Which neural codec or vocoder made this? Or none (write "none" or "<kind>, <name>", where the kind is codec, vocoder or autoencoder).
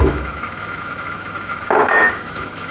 autoencoder, DAC-VAE